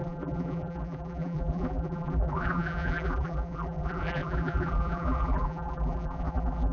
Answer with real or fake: fake